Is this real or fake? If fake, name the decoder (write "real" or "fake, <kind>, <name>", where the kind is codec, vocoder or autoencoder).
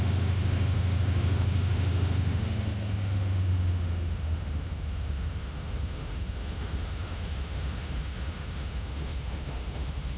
fake, autoencoder, DAC-VAE